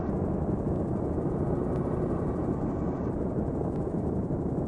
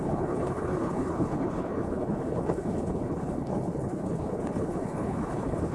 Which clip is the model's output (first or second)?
second